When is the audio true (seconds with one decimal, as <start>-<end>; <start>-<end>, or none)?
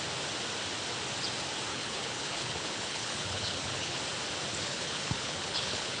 0.0-1.7; 4.0-4.5